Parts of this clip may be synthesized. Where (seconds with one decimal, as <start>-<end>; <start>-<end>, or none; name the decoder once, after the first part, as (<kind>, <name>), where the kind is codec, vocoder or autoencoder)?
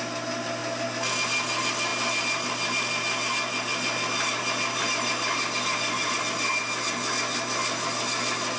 none